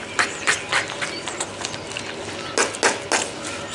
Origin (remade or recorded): recorded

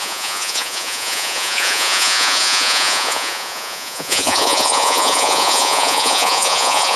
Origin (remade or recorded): remade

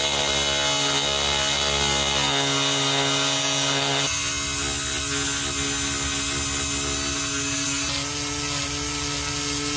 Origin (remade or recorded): recorded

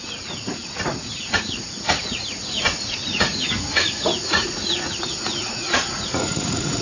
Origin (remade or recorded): remade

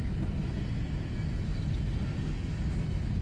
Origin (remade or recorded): recorded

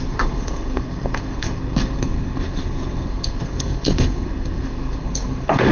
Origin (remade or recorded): remade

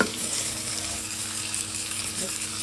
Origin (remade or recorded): remade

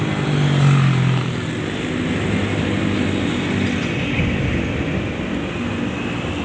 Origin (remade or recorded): recorded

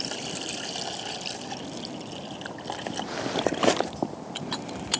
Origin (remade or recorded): recorded